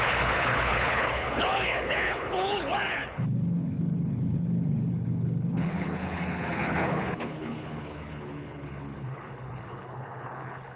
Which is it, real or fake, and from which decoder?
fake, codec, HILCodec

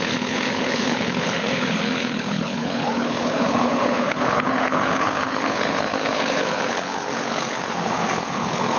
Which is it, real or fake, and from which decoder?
fake, codec, HILCodec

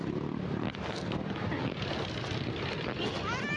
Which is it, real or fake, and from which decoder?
real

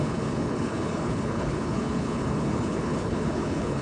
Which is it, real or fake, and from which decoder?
fake, codec, HILCodec